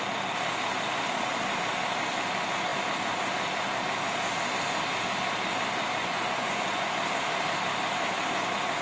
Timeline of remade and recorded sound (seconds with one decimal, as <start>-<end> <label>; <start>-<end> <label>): 0.0-6.0 recorded; 6.0-6.9 remade; 6.9-8.8 recorded